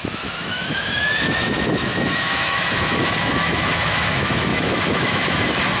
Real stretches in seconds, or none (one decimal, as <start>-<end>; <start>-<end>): none

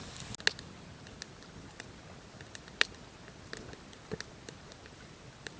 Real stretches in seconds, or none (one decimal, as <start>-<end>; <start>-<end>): 0.0-5.6